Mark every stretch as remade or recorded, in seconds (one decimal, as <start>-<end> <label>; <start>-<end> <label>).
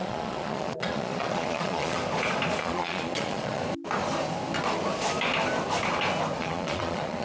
0.0-2.0 remade; 2.0-2.6 recorded; 2.6-3.6 remade; 3.6-6.4 recorded; 6.4-7.2 remade